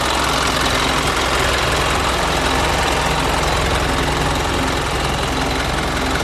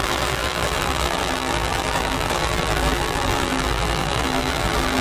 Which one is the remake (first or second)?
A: second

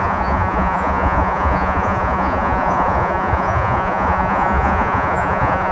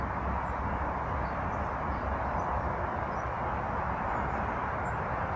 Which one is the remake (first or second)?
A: first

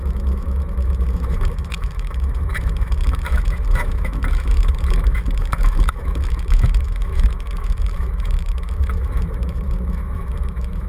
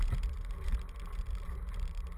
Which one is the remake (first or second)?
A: first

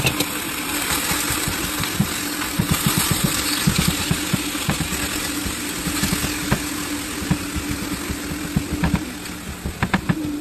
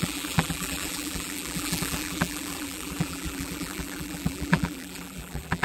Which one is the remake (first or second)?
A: second